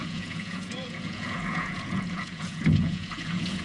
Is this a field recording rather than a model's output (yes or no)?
no